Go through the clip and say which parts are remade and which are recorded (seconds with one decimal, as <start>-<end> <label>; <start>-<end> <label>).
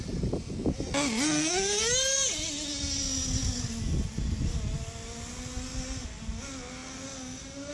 0.0-7.7 recorded